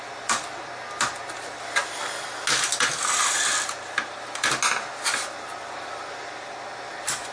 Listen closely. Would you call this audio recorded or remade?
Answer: recorded